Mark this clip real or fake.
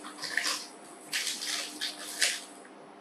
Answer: real